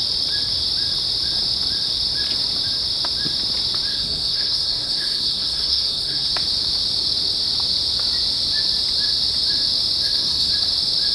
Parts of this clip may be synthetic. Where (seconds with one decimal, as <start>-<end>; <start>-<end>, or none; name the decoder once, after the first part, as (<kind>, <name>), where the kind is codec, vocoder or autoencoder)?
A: 3.9-6.3 (codec, SNAC); 10.0-10.5